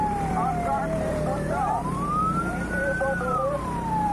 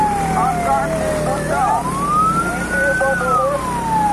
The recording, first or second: second